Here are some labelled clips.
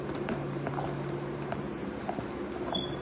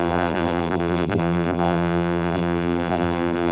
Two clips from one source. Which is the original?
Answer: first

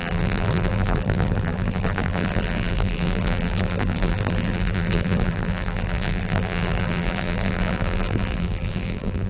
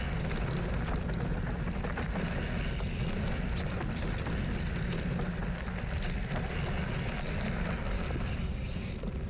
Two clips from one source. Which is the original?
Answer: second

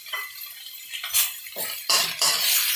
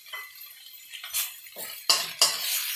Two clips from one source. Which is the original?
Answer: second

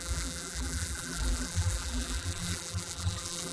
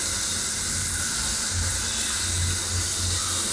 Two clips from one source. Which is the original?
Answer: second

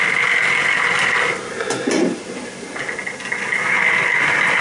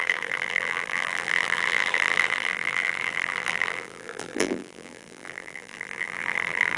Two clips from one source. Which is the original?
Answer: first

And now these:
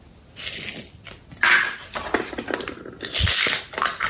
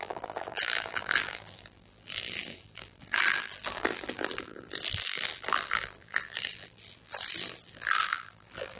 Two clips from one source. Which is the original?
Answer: first